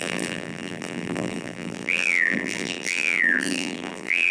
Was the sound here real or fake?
fake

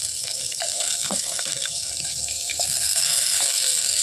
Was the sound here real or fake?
fake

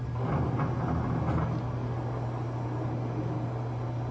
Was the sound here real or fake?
real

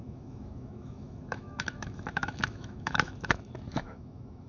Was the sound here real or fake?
fake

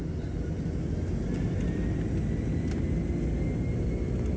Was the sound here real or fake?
real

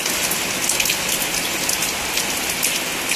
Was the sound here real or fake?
real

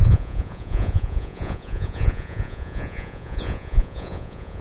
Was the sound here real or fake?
fake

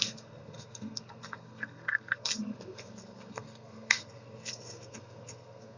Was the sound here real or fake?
fake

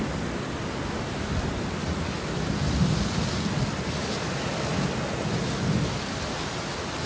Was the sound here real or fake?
real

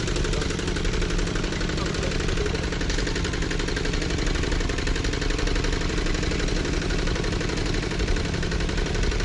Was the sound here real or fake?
fake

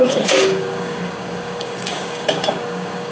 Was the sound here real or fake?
fake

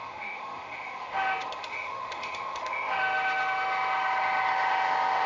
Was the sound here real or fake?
fake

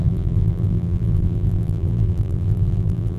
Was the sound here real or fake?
fake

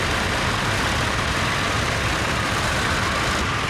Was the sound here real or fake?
real